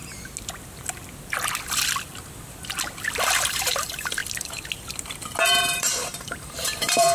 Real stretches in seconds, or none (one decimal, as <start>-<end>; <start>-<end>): 0.0-3.2; 4.2-5.6